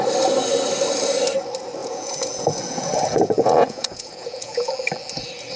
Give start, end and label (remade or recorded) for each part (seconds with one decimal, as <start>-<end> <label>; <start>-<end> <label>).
0.0-1.8 recorded; 1.8-4.7 remade; 4.7-5.6 recorded